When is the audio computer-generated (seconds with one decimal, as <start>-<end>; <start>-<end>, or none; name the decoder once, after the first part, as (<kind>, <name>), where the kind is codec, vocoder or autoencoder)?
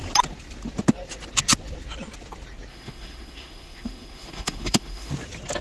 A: 2.7-5.1 (autoencoder, DAC-VAE)